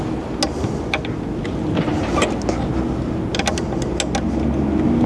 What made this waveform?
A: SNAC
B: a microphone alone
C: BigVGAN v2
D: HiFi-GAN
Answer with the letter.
B